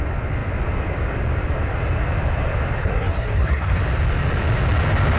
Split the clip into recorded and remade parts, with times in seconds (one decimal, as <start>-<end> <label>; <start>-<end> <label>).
0.0-2.8 recorded; 2.8-3.8 remade; 3.8-5.2 recorded